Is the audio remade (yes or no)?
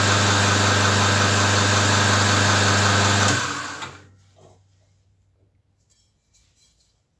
no